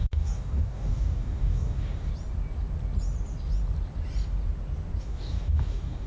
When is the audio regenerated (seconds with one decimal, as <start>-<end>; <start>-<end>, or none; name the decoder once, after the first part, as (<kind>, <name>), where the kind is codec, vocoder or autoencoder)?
0.0-2.1 (codec, DAC); 5.0-6.1